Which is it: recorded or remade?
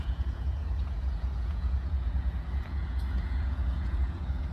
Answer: remade